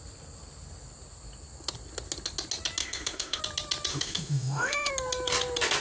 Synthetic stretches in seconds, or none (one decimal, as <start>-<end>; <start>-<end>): 2.8-3.4; 3.9-4.9